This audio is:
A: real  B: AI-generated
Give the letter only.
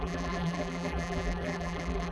B